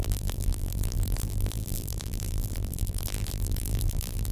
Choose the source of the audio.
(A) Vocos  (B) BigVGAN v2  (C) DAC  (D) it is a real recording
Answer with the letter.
B